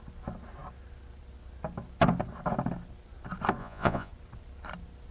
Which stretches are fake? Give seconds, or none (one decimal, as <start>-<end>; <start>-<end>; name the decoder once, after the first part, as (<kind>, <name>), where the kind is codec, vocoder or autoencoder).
3.6-4.1 (vocoder, Vocos)